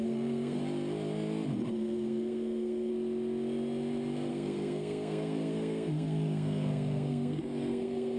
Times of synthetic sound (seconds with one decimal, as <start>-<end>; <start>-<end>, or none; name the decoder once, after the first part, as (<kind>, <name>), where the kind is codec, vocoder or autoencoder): 0.0-0.6 (codec, SNAC); 1.7-2.9; 4.3-8.2